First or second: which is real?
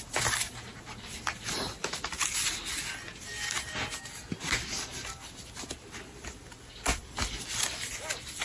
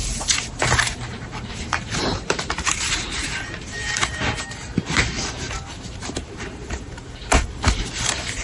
first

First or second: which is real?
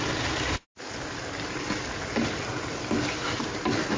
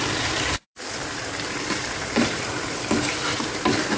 first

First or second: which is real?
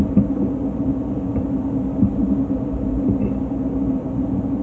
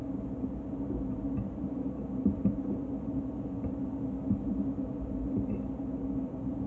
second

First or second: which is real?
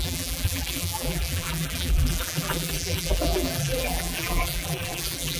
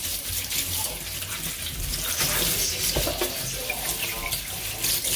second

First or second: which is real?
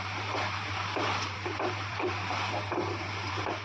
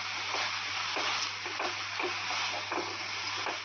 second